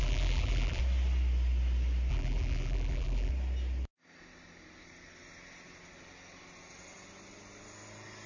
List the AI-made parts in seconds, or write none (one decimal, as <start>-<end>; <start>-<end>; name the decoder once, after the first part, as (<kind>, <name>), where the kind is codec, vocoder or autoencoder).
0.0-0.8 (vocoder, BigVGAN v2); 2.1-3.3